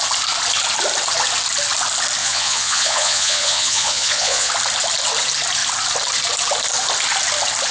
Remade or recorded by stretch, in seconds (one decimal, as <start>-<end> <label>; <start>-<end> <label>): 0.0-2.2 recorded; 2.2-4.5 remade; 4.5-7.7 recorded